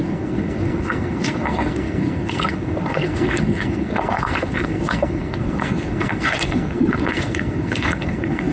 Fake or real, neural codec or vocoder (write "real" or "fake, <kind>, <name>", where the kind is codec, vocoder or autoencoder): fake, codec, SNAC